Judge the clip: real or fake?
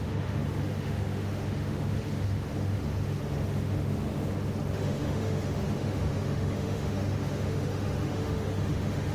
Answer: fake